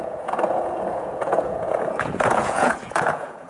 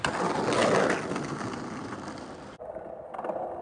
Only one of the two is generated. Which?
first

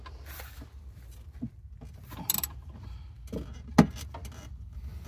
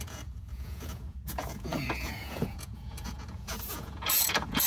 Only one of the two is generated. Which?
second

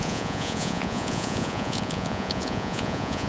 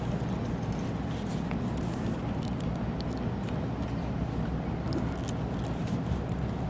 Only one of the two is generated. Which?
first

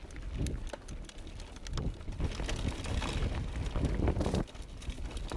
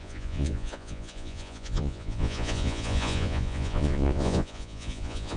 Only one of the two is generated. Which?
second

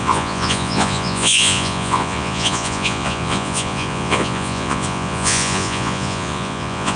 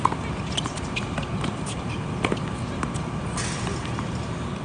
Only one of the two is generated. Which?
first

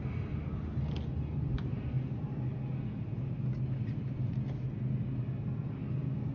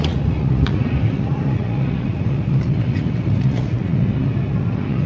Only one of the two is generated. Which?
second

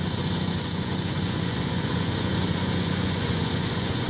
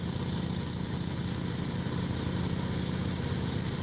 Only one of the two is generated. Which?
first